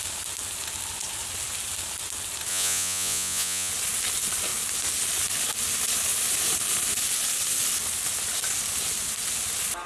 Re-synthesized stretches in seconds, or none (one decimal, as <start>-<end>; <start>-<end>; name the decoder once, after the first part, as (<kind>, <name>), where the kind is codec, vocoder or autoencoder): 2.5-3.7 (vocoder, Vocos)